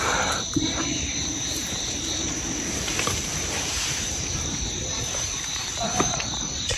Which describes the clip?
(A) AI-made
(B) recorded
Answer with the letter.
A